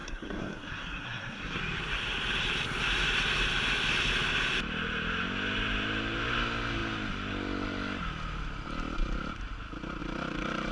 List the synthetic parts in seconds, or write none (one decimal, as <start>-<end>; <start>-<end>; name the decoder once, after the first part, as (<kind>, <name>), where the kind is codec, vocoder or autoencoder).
0.0-1.6 (codec, SNAC)